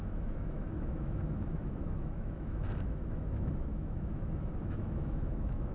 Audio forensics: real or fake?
fake